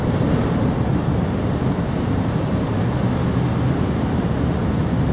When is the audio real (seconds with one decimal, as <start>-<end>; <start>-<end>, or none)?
0.0-0.9; 2.8-3.5